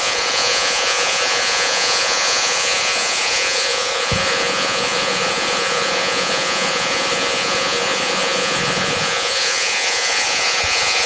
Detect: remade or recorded remade